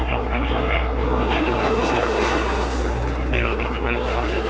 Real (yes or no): no